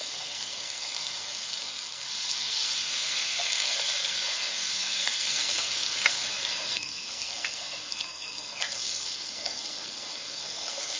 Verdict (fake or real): fake